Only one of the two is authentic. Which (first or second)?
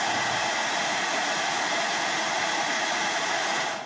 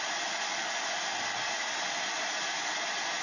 second